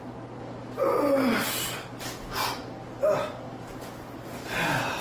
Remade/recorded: recorded